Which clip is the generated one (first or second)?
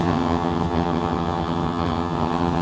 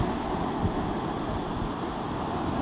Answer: first